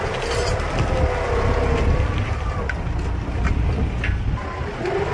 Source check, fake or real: real